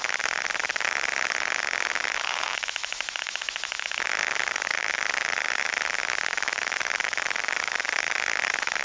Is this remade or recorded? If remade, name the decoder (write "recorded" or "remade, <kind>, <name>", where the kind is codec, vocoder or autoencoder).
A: remade, autoencoder, DAC-VAE